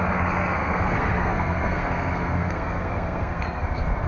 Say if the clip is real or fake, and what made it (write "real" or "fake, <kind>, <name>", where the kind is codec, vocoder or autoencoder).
fake, codec, SNAC